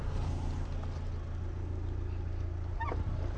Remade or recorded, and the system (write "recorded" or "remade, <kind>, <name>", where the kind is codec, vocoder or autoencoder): recorded